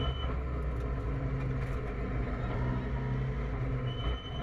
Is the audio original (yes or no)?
yes